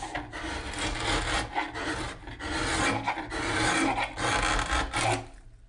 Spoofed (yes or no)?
no